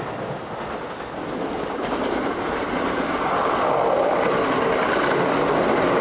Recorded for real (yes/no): yes